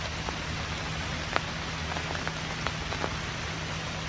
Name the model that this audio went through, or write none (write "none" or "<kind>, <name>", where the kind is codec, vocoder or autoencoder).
none